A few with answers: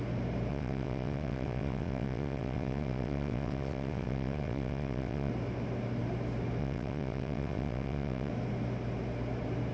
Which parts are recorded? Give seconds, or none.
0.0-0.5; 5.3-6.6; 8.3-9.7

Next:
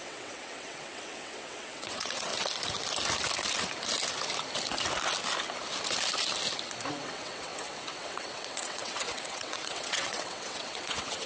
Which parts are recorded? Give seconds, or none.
2.3-6.9

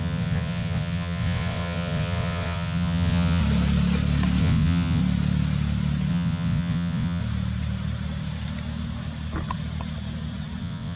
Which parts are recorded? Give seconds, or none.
3.4-4.4; 5.0-6.1; 7.2-10.6

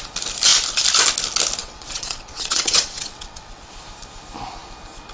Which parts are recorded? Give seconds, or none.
0.0-1.6; 3.7-5.1